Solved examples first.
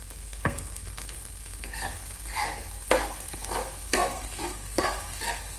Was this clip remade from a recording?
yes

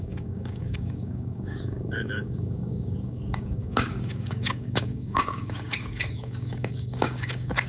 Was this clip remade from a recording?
yes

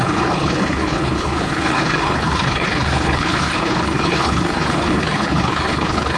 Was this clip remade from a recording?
yes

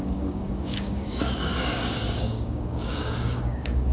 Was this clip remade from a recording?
yes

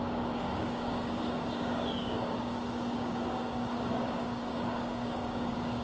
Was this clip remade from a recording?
yes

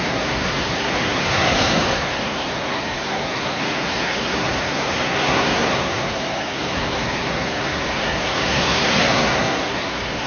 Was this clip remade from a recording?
yes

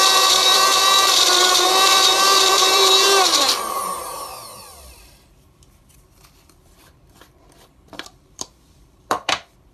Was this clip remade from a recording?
yes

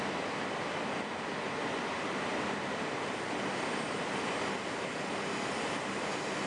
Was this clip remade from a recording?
no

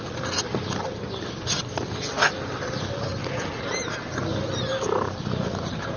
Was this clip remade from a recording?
no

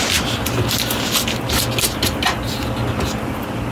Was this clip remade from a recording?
no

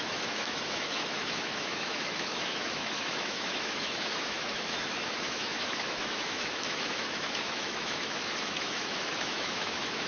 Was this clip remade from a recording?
yes